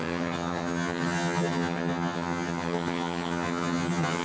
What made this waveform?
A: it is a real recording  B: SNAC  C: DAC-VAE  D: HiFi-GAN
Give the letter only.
D